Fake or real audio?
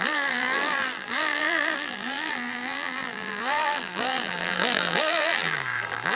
fake